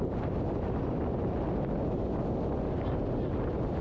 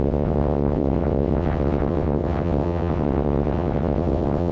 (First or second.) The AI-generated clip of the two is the second